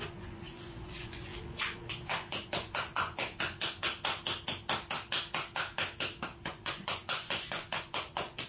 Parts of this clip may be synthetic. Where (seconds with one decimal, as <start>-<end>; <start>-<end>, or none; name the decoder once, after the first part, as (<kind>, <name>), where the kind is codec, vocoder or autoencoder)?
0.0-3.8 (vocoder, Vocos); 6.5-8.5